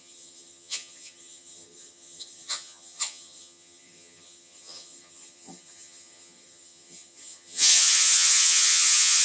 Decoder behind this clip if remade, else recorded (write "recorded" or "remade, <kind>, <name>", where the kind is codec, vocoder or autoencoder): remade, vocoder, HiFi-GAN